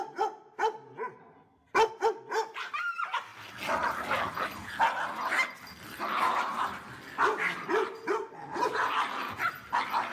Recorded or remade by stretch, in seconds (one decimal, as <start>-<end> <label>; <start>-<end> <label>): 0.0-10.1 recorded